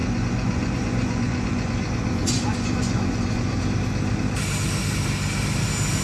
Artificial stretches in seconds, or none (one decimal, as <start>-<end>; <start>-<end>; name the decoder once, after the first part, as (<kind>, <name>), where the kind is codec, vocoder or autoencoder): 0.0-3.6 (vocoder, Vocos)

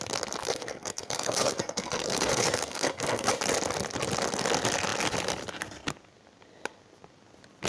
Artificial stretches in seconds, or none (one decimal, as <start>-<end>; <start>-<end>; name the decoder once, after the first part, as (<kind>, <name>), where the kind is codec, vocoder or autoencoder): 0.4-3.3 (codec, SNAC)

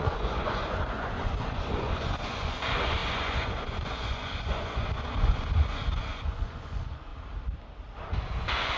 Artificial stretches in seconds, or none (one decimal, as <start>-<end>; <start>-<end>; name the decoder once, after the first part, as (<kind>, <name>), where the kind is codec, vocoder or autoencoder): 0.0-7.1 (vocoder, Vocos); 8.2-8.8

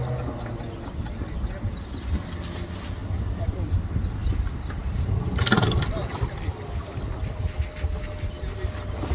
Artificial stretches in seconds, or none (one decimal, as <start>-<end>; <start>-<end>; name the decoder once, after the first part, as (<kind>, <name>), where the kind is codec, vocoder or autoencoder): 4.2-5.1 (vocoder, BigVGAN v2)

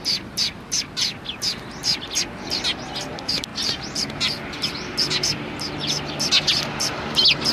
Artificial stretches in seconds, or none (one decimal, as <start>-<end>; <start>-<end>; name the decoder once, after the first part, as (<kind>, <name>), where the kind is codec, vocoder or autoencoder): none